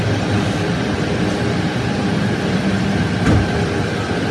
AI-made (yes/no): no